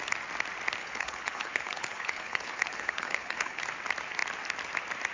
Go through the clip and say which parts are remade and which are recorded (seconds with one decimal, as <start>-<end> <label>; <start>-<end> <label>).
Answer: 0.0-0.8 recorded; 0.8-3.6 remade; 3.6-5.1 recorded